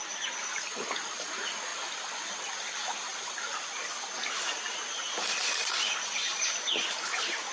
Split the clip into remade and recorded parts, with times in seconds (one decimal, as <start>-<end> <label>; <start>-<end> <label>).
0.0-7.5 recorded